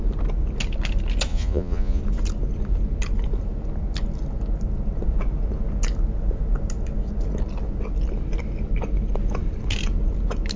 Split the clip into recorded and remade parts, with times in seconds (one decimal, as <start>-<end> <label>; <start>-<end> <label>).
0.0-1.3 recorded; 1.3-2.0 remade; 2.0-10.6 recorded